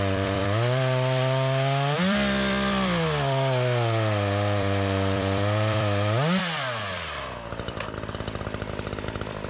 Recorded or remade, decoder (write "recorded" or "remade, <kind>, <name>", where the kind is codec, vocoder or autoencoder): remade, vocoder, BigVGAN v2